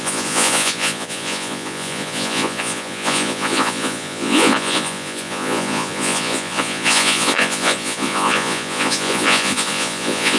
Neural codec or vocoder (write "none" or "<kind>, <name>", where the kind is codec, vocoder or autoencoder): vocoder, Vocos